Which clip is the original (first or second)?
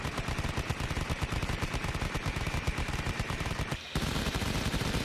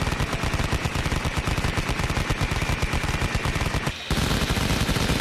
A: second